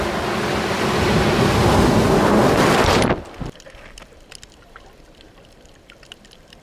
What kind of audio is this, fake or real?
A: real